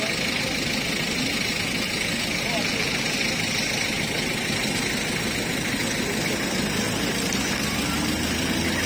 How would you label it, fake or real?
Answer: real